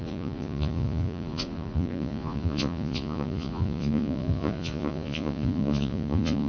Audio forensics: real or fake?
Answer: fake